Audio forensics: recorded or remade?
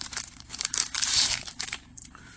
remade